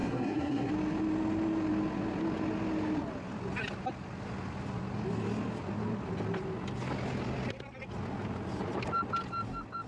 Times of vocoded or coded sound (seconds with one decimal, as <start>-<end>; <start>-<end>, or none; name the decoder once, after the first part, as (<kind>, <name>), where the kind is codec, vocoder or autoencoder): 0.0-0.7 (codec, SNAC)